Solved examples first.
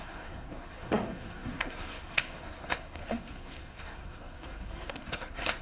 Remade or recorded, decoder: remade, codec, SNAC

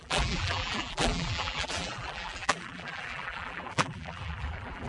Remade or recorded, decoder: remade, vocoder, BigVGAN v2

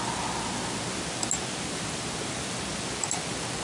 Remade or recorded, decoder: recorded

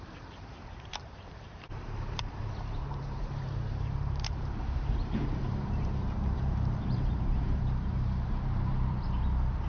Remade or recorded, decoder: remade, vocoder, BigVGAN v2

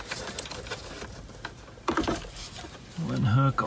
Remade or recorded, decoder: recorded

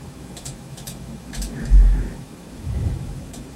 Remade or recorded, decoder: remade, autoencoder, DAC-VAE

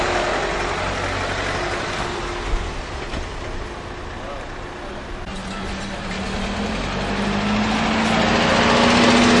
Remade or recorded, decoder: recorded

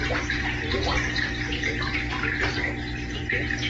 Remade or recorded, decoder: recorded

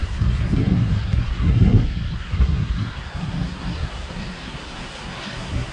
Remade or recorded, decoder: remade, codec, SNAC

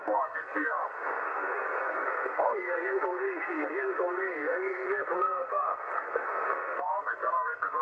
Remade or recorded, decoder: remade, codec, SNAC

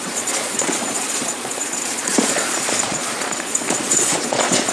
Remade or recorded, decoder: remade, vocoder, Vocos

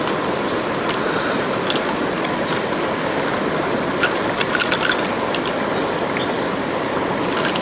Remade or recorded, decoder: recorded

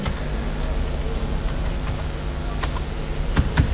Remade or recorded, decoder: recorded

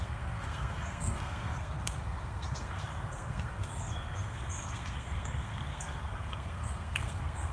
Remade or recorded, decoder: remade, codec, SNAC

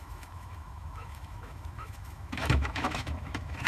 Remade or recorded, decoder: remade, autoencoder, DAC-VAE